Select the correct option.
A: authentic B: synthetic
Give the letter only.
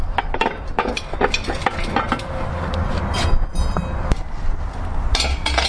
A